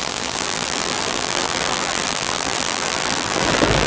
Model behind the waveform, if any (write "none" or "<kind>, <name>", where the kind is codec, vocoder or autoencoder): vocoder, BigVGAN v2